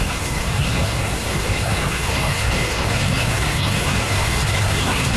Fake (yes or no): yes